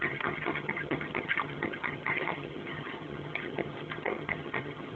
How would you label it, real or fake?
fake